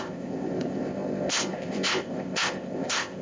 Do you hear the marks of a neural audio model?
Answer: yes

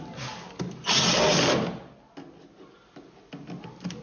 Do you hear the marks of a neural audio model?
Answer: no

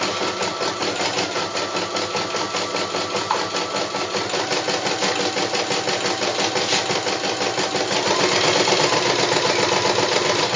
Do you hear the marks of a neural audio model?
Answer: no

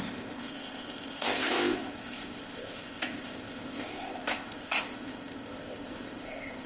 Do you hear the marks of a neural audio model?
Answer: yes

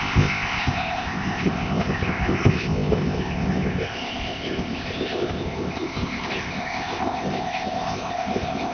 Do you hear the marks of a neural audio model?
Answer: yes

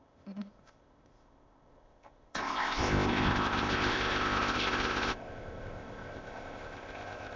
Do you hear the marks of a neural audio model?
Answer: yes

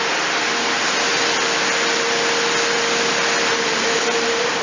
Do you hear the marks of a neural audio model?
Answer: no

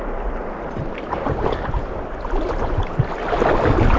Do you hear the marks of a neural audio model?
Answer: no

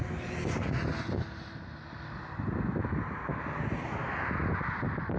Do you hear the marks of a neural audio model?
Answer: no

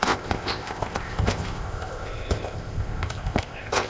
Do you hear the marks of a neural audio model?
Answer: yes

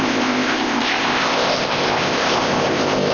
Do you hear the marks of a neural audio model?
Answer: yes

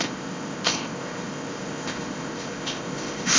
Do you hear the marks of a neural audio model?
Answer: yes